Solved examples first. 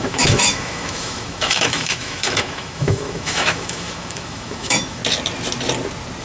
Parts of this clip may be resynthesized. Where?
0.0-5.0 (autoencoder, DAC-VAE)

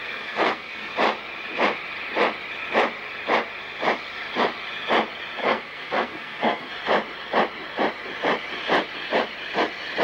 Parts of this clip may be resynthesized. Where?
0.0-0.9 (codec, SNAC); 5.4-6.7

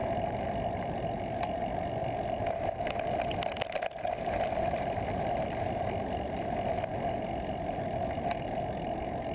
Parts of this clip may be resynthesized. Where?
0.0-2.9 (vocoder, BigVGAN v2)